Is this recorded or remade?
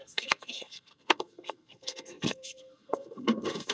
remade